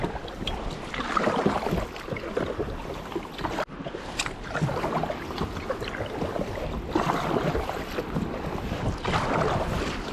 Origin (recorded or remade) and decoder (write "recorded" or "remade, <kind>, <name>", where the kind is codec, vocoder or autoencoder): recorded